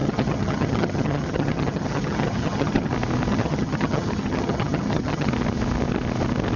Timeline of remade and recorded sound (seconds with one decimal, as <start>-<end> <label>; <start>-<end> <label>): 0.0-2.9 remade; 2.9-3.3 recorded; 3.3-5.3 remade; 5.3-6.6 recorded